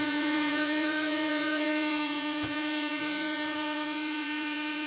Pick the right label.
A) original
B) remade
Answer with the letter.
B